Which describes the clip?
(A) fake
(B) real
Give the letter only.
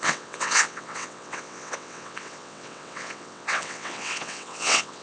A